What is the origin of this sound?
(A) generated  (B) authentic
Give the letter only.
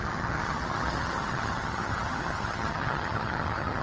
A